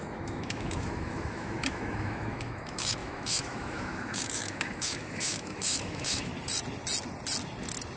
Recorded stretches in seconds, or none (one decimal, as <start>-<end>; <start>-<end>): 6.3-8.0